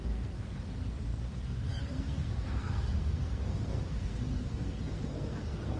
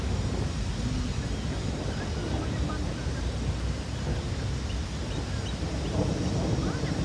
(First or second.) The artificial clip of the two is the first